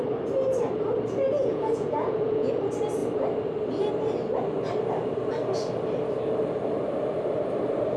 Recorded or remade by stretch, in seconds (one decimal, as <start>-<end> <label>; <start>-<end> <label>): 0.0-1.4 recorded; 1.4-2.6 remade; 2.6-8.0 recorded